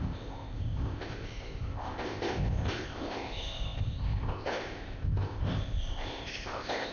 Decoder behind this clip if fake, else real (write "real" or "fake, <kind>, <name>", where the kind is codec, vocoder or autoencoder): fake, codec, ZipCodec